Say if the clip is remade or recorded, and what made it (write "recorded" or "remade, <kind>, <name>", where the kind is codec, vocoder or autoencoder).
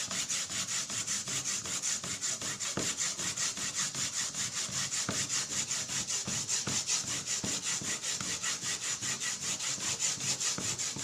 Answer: recorded